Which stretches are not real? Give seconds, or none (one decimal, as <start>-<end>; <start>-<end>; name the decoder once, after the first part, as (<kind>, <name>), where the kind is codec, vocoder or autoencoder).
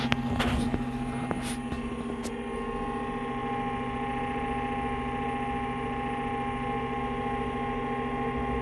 none